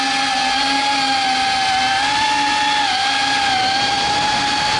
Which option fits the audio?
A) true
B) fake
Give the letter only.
A